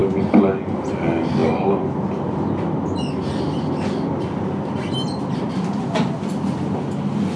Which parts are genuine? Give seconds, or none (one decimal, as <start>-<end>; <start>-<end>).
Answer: 0.0-7.4